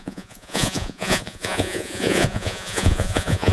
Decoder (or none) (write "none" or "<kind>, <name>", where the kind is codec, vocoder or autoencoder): vocoder, Vocos